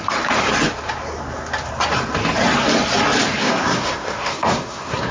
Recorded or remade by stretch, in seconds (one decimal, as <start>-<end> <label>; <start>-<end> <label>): 0.0-3.4 recorded; 3.4-5.1 remade